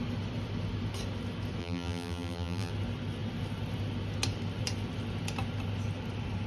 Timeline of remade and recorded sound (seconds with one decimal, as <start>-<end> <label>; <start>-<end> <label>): 0.0-1.6 recorded; 1.6-2.7 remade; 2.7-6.5 recorded